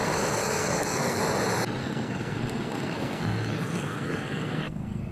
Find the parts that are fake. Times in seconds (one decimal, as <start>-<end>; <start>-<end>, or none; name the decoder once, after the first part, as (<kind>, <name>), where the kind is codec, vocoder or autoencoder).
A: 0.0-1.2 (codec, SNAC); 1.8-5.1